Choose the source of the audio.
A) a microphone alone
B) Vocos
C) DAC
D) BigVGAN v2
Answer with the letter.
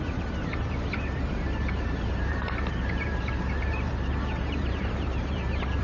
D